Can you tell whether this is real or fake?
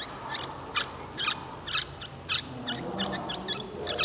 real